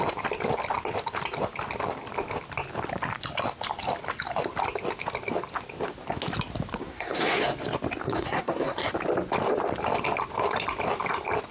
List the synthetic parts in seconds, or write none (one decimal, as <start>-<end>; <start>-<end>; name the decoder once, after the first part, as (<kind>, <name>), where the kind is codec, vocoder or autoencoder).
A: 6.8-7.4 (codec, SNAC); 8.0-8.9